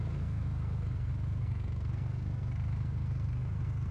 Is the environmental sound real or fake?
fake